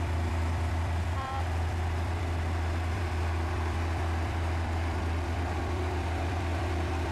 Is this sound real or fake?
fake